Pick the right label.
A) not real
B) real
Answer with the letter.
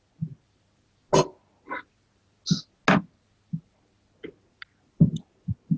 B